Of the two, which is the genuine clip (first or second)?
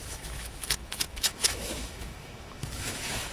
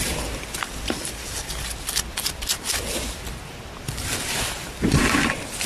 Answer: second